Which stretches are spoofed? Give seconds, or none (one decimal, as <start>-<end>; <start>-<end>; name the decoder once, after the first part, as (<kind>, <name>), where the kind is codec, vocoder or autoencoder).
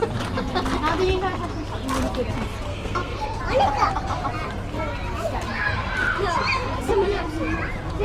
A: 2.7-3.4 (codec, SNAC)